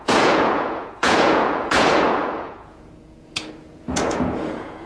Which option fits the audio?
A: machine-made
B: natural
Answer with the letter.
A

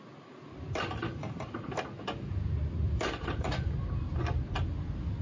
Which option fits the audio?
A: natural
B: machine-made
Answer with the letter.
A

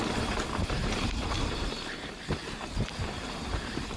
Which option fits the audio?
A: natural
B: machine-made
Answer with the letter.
B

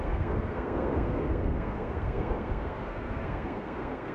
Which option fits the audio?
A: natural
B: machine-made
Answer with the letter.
B